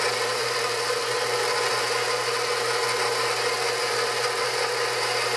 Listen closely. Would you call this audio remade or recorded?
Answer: recorded